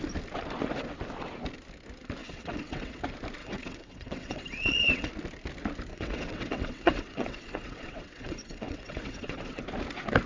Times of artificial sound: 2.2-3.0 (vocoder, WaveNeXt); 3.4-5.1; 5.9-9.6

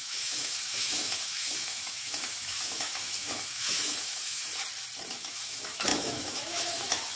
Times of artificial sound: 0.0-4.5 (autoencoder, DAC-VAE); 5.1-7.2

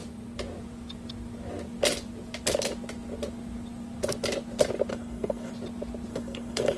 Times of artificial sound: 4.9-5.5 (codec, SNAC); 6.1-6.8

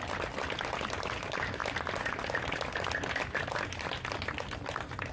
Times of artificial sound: none